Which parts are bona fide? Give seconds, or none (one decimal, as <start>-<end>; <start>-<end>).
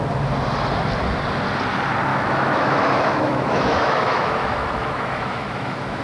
0.0-2.1